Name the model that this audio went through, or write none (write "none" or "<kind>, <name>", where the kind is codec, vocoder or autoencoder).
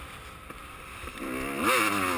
none